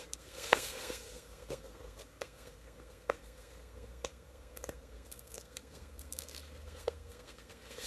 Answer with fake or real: fake